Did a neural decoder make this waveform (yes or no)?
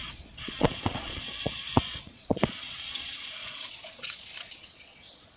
yes